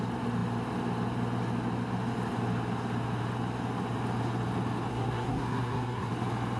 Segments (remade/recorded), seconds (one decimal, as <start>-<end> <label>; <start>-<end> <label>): 0.0-4.9 recorded; 4.9-6.1 remade; 6.1-6.6 recorded

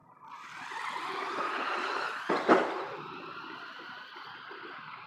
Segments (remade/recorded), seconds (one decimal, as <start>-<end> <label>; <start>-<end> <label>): 0.0-5.1 recorded

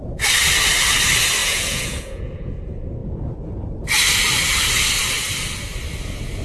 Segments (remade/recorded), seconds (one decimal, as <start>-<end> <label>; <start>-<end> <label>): 0.0-1.4 recorded; 1.4-2.5 remade; 2.5-6.4 recorded

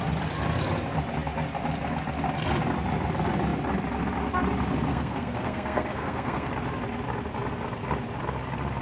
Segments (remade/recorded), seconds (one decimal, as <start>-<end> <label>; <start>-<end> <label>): 0.0-4.9 recorded; 4.9-6.5 remade; 6.5-8.8 recorded

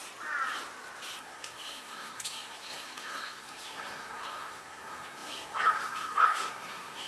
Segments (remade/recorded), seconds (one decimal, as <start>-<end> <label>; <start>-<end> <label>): 0.0-1.2 recorded; 1.2-7.1 remade

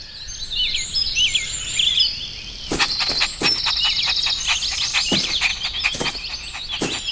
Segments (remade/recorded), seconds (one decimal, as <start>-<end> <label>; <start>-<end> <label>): 0.0-7.1 recorded

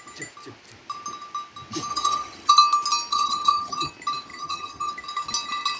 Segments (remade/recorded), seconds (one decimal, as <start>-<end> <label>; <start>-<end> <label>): 0.0-1.9 recorded; 1.9-2.5 remade; 2.5-3.1 recorded; 3.1-3.9 remade; 3.9-4.3 recorded; 4.3-4.9 remade; 4.9-5.8 recorded